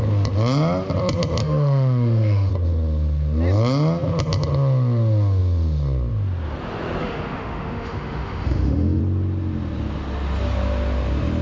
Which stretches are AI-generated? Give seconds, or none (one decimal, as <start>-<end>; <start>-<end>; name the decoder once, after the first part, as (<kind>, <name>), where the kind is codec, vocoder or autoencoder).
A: 1.4-2.5 (autoencoder, DAC-VAE); 7.0-9.0